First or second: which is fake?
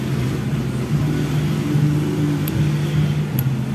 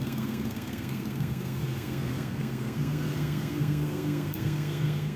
second